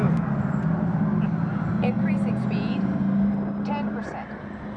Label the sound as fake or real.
real